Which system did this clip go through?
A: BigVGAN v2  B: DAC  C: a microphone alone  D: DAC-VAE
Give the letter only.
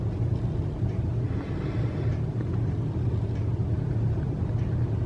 C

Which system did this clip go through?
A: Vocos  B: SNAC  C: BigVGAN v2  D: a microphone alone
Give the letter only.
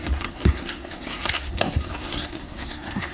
B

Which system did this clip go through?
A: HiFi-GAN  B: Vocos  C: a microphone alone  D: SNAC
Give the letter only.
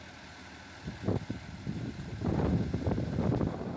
C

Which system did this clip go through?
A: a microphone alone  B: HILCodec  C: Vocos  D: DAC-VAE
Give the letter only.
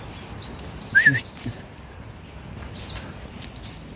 A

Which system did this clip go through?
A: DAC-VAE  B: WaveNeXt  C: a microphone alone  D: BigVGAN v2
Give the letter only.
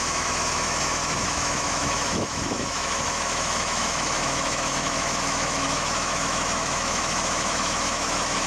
A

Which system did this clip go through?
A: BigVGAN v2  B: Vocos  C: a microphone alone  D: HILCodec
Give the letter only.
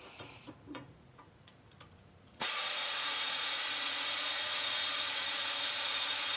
B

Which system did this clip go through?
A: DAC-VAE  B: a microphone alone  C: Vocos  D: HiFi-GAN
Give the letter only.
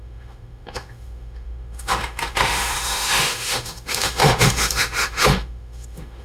A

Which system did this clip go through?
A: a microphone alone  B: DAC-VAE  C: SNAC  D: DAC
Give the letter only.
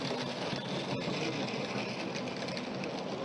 A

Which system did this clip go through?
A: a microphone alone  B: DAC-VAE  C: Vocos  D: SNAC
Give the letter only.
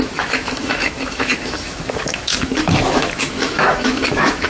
B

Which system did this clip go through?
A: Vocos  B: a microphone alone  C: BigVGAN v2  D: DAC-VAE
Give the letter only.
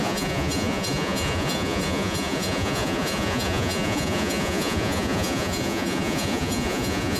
A